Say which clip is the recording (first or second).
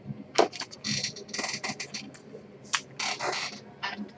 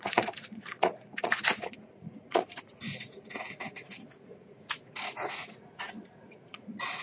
first